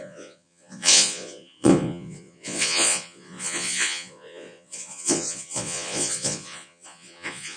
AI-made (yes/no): yes